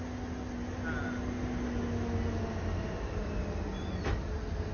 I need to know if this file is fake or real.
real